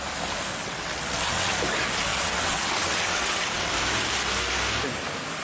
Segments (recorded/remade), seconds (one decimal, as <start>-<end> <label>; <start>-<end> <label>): 0.0-0.5 recorded; 0.5-1.5 remade; 1.5-2.1 recorded; 2.1-3.7 remade; 3.7-5.4 recorded

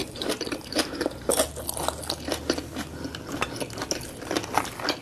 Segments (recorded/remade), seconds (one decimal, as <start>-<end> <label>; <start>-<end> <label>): 0.0-1.3 remade; 1.3-5.0 recorded